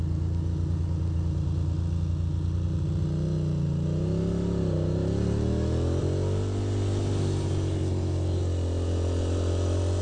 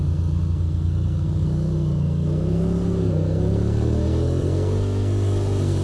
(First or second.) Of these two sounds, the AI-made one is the second